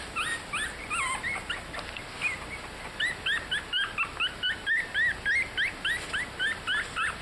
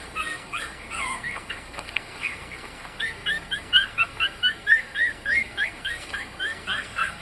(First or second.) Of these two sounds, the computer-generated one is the second